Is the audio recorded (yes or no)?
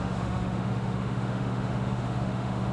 no